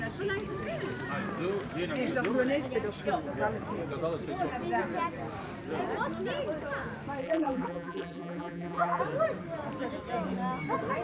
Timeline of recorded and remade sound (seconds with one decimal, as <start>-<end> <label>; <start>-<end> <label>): 0.0-7.2 recorded; 7.2-9.0 remade; 9.0-11.0 recorded